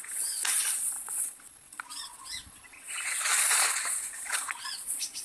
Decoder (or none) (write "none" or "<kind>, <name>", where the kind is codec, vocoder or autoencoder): vocoder, Vocos